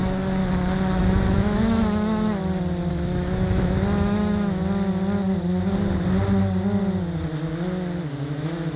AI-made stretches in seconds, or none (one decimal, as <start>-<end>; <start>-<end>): 0.0-0.4; 1.0-2.4; 2.9-4.6; 8.0-8.8